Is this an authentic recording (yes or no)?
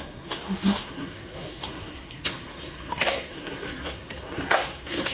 no